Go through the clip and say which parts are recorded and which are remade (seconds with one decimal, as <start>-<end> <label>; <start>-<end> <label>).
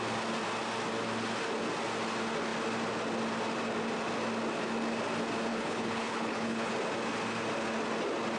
0.0-5.5 recorded; 5.5-6.7 remade; 6.7-8.4 recorded